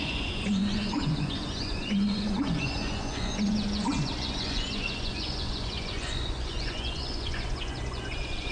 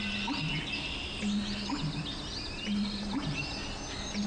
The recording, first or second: second